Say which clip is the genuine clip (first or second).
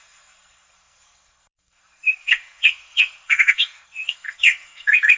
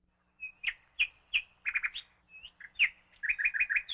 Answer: second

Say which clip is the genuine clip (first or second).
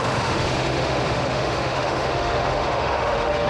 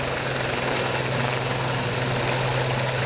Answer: second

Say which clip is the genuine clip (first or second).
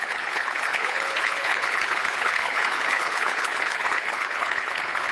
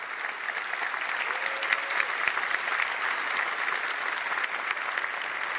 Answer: second